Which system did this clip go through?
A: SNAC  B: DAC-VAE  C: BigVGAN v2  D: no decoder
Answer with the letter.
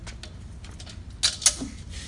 D